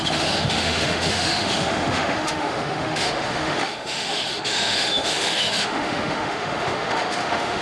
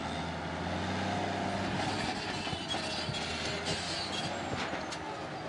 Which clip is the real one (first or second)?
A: second